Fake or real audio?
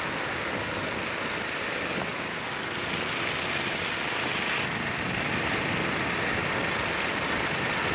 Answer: real